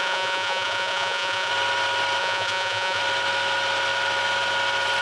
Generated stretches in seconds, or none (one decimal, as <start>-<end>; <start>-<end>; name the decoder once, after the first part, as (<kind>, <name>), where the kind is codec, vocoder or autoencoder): 0.0-1.5 (vocoder, Vocos); 2.2-3.0